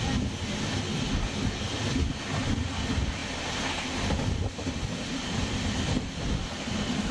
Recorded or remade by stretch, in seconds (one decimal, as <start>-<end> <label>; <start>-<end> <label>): 0.0-0.9 recorded; 0.9-2.3 remade; 2.3-3.2 recorded; 3.2-3.9 remade; 3.9-7.1 recorded

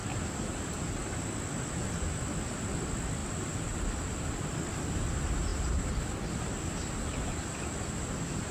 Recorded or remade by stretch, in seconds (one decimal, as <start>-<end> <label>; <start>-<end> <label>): 0.0-3.2 recorded; 3.2-4.7 remade; 4.7-7.5 recorded; 7.5-8.5 remade

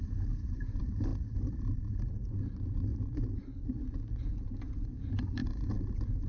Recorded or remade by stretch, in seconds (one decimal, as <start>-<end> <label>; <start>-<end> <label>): 0.0-1.1 remade; 1.1-2.1 recorded; 2.1-2.9 remade; 2.9-4.2 recorded; 4.2-5.4 remade; 5.4-6.3 recorded